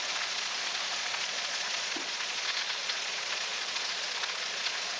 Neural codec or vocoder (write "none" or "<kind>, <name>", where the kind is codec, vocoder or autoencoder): vocoder, Vocos